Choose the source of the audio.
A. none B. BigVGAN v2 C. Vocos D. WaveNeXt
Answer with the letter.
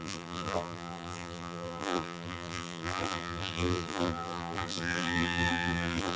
B